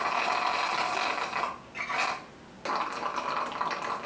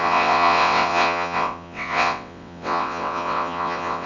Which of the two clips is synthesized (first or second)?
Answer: second